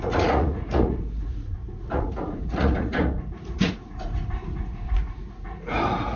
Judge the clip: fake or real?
fake